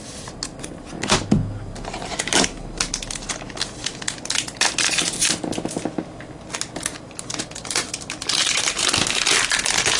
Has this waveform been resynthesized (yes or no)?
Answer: no